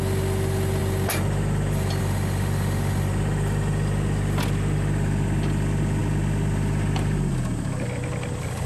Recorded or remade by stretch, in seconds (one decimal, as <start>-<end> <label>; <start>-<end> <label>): 0.0-8.7 recorded